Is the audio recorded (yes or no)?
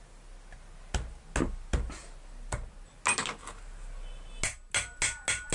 yes